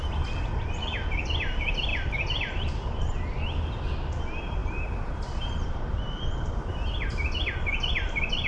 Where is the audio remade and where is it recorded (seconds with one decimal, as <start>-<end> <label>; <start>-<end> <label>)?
0.0-1.9 recorded; 1.9-2.7 remade; 2.7-8.5 recorded